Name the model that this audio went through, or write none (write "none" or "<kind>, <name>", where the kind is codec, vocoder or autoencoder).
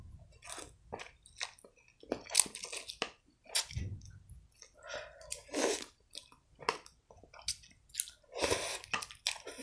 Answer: none